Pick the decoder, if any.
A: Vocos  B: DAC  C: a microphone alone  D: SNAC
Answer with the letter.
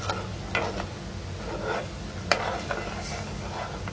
C